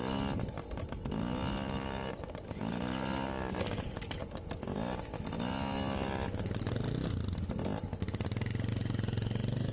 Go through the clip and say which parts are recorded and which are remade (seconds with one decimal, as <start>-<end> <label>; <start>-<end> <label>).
0.0-9.7 recorded